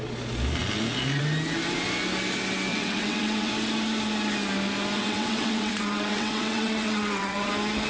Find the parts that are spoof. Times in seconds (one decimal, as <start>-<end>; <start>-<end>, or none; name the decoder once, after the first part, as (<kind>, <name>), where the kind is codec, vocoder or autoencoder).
2.7-3.5 (vocoder, WaveNeXt); 5.0-7.5